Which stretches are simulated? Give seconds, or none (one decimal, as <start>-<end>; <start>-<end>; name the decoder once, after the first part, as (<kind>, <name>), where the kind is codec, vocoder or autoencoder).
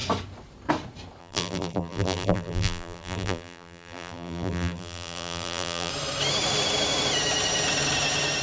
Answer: 1.2-5.9 (vocoder, BigVGAN v2)